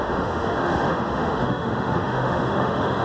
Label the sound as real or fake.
fake